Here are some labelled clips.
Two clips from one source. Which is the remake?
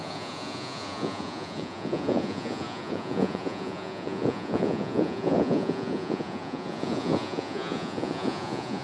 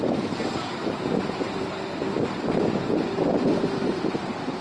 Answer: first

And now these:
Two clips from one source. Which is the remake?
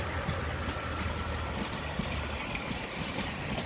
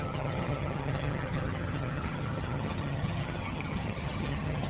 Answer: second